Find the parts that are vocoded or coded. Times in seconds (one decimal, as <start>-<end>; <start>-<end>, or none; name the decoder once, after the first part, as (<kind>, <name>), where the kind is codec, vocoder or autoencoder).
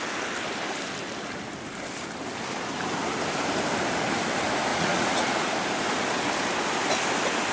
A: 4.7-5.5 (vocoder, Vocos)